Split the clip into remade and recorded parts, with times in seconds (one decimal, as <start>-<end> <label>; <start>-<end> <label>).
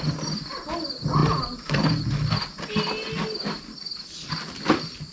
0.0-5.1 recorded